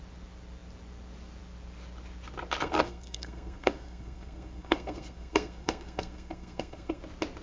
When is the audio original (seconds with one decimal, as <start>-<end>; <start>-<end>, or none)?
0.0-2.6; 7.0-7.4